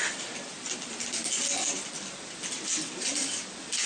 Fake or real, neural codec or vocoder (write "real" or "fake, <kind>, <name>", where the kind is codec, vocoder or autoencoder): real